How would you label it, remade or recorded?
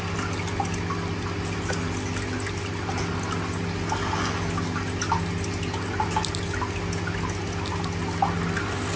recorded